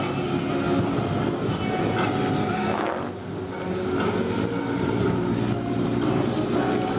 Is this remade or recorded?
recorded